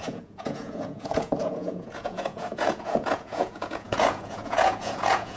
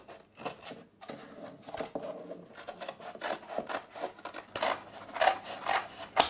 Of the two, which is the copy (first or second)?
first